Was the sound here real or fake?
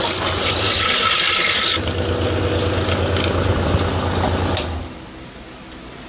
real